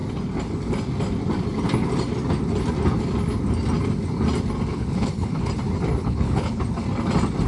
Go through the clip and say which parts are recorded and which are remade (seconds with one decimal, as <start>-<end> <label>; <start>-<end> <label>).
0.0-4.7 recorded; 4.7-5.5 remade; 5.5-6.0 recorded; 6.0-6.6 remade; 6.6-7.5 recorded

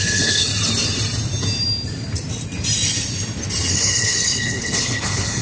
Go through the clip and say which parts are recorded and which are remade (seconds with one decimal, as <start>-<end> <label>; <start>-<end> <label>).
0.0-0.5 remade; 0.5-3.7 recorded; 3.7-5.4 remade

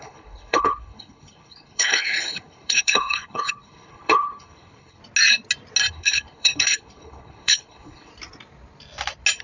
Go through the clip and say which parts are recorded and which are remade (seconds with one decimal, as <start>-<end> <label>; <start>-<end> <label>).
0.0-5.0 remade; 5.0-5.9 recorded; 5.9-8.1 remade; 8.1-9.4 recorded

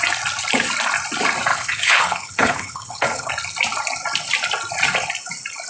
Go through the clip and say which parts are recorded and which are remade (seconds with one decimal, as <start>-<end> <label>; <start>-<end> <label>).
0.0-1.5 recorded; 1.5-3.3 remade; 3.3-5.7 recorded

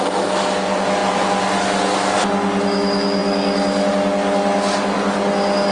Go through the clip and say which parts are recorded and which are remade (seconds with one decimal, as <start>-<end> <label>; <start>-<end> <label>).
0.0-5.7 recorded

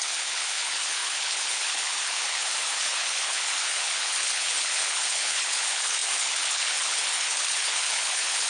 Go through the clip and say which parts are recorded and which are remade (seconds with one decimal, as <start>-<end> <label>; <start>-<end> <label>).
0.0-8.5 remade